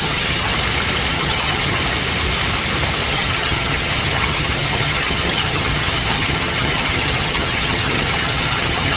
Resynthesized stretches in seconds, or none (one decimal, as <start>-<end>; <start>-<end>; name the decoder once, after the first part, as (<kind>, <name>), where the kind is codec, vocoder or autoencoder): 0.0-0.5 (vocoder, HiFi-GAN); 1.1-1.8; 3.1-9.0